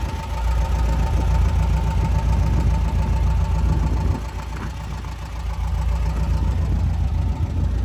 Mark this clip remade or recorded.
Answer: recorded